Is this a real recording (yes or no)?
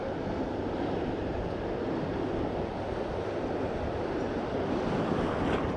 yes